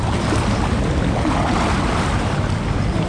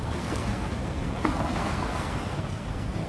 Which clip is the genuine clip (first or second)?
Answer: first